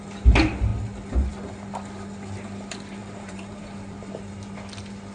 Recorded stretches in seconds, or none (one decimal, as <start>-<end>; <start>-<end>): 0.0-3.0; 4.1-5.1